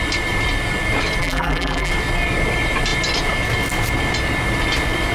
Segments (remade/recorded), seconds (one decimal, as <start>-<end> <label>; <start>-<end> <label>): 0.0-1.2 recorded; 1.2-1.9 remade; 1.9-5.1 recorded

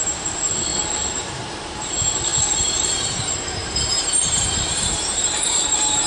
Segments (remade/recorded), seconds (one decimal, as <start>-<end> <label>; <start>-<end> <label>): 0.0-0.7 remade; 0.7-1.2 recorded; 1.2-6.1 remade

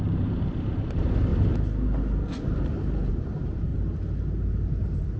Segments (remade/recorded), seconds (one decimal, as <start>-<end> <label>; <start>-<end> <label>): 0.0-1.3 remade; 1.3-3.1 recorded; 3.1-3.7 remade; 3.7-4.8 recorded; 4.8-5.2 remade

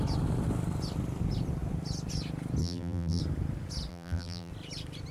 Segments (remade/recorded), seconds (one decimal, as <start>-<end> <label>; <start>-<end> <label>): 0.0-2.6 recorded; 2.6-3.2 remade; 3.2-3.9 recorded; 3.9-4.5 remade; 4.5-5.1 recorded

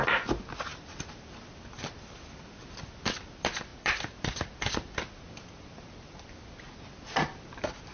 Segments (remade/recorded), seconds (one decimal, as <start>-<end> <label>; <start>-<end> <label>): 0.0-0.7 recorded; 0.7-2.9 remade; 2.9-3.7 recorded; 3.7-6.3 remade; 6.3-7.9 recorded

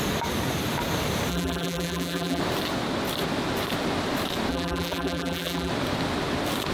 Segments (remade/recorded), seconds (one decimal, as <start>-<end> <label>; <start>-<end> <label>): 0.0-1.3 recorded; 1.3-2.4 remade; 2.4-4.5 recorded; 4.5-5.7 remade; 5.7-6.7 recorded

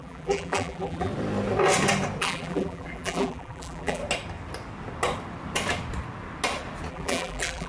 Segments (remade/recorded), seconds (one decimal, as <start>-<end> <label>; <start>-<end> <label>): 0.0-1.1 remade; 1.1-2.2 recorded; 2.2-4.0 remade; 4.0-6.9 recorded; 6.9-7.7 remade